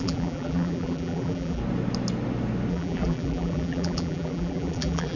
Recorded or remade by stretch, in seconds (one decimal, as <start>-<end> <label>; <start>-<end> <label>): 0.0-1.6 remade; 1.6-2.7 recorded; 2.7-5.2 remade